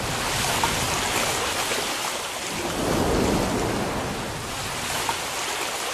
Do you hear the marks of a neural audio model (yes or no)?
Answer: no